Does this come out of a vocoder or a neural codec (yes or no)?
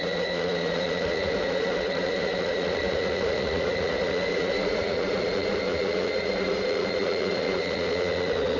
yes